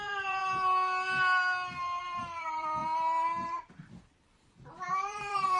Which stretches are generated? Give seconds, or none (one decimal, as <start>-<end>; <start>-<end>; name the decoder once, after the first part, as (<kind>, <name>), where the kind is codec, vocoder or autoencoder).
0.0-0.4 (vocoder, BigVGAN v2); 2.0-2.8; 3.7-5.6